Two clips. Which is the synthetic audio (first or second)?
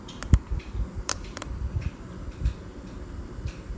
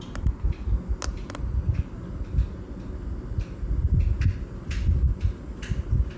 first